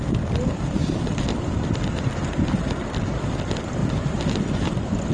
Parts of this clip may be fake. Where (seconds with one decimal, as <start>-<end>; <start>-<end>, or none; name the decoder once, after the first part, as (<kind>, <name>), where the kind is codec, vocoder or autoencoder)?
0.0-3.8 (vocoder, BigVGAN v2)